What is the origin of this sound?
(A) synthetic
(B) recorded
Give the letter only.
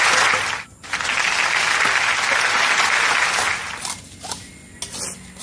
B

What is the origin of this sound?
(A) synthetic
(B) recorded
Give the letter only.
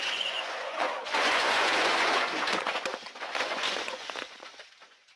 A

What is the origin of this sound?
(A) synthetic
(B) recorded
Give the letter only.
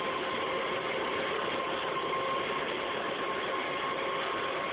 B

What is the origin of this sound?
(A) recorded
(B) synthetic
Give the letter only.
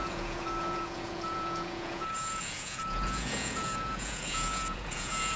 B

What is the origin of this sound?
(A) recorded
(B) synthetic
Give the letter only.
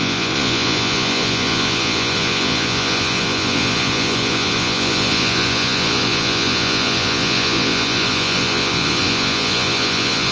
B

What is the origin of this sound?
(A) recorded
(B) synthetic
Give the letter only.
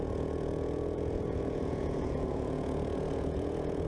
B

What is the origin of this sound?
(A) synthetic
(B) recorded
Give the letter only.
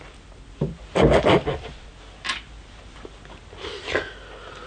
B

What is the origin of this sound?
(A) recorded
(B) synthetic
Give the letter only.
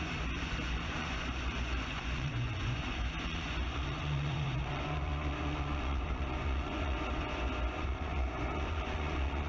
B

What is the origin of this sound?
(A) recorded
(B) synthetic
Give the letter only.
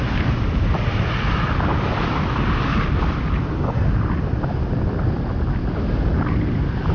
A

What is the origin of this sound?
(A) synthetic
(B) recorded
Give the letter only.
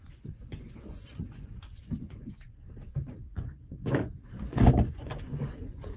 A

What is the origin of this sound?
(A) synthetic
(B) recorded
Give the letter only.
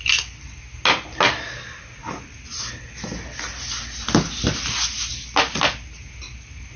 B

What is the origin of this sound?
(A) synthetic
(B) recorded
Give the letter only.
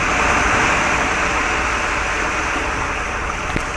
B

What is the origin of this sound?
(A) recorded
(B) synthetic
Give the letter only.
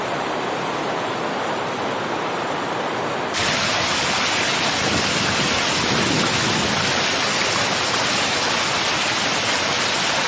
A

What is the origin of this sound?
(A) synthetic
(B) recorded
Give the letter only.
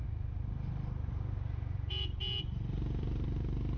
B